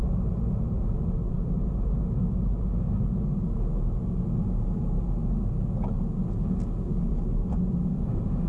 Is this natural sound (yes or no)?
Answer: yes